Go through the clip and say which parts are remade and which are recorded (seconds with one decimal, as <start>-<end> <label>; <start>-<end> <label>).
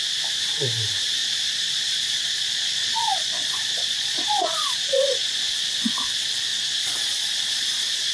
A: 0.0-1.2 recorded; 1.2-5.5 remade; 5.5-6.5 recorded; 6.5-8.1 remade